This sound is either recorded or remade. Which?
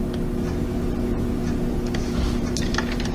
remade